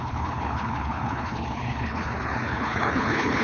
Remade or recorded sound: remade